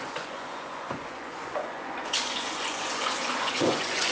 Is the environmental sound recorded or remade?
remade